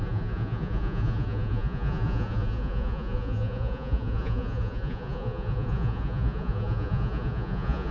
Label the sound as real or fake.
fake